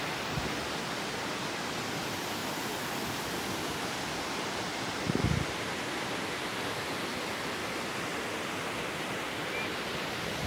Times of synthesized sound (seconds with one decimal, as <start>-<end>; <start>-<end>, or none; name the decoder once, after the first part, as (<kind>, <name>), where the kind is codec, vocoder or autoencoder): 7.6-8.1 (vocoder, BigVGAN v2); 9.4-10.5